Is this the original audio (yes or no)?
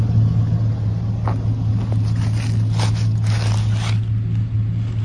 yes